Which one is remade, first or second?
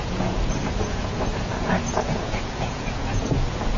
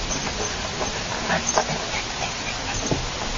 first